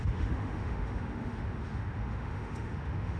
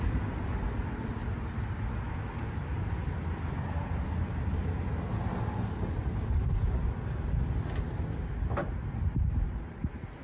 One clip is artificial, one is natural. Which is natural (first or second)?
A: second